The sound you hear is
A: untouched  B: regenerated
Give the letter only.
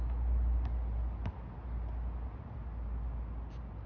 A